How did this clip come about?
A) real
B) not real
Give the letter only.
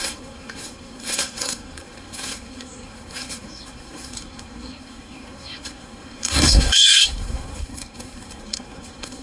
B